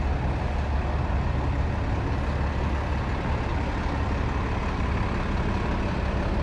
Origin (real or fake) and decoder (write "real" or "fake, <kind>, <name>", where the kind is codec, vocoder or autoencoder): real